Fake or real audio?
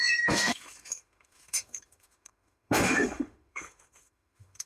fake